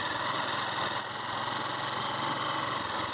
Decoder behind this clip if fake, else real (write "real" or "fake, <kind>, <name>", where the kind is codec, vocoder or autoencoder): real